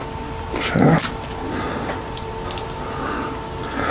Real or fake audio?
real